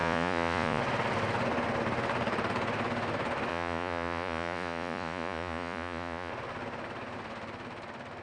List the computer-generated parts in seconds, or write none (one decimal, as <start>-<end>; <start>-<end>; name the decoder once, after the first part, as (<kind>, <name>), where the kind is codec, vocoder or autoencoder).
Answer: 0.0-0.8 (vocoder, Vocos); 3.5-6.3